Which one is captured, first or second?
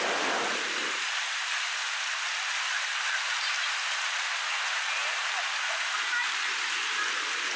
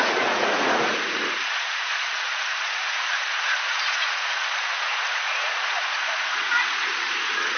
first